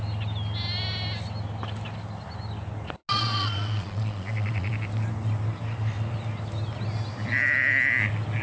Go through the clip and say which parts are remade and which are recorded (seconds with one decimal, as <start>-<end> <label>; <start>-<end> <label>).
0.0-3.1 recorded; 3.1-4.7 remade; 4.7-8.4 recorded